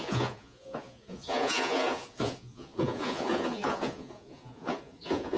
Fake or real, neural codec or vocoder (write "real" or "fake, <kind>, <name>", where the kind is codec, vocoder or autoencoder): fake, vocoder, Vocos